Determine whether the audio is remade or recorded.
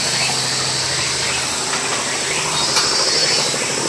recorded